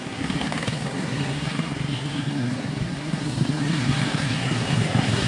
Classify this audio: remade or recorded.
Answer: remade